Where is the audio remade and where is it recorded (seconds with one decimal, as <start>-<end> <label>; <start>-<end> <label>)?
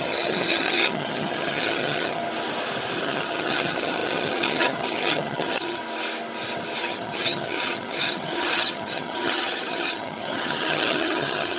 0.0-2.2 remade; 2.2-3.0 recorded; 3.0-5.8 remade; 5.8-6.8 recorded; 6.8-11.6 remade